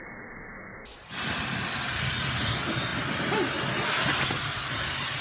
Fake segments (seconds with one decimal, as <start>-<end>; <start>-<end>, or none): none